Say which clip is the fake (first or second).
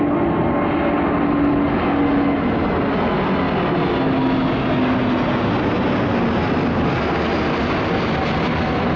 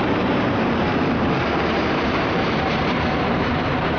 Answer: second